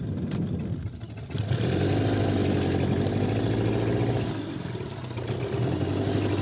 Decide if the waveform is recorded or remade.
recorded